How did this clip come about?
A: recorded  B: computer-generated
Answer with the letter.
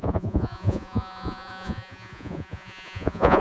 B